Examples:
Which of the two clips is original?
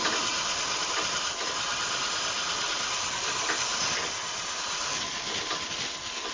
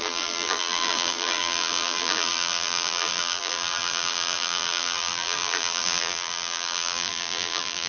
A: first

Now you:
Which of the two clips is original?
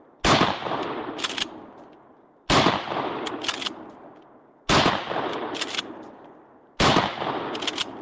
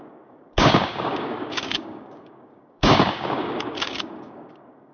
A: first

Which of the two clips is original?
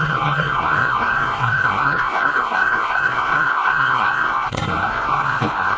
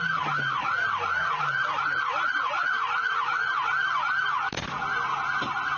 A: second